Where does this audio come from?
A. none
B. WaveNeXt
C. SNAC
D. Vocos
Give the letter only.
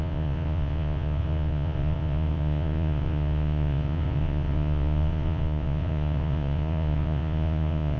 D